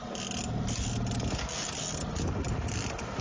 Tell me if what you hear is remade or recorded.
recorded